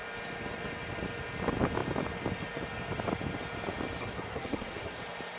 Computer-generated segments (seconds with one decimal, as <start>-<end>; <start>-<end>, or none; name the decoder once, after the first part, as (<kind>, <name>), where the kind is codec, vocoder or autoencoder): 4.0-5.0 (codec, SNAC)